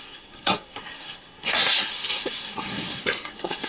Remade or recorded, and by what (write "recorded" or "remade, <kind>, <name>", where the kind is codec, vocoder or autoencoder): remade, codec, SNAC